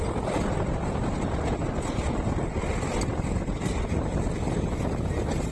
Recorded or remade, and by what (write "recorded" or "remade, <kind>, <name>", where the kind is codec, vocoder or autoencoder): recorded